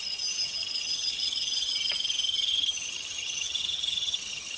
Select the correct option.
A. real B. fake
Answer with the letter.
B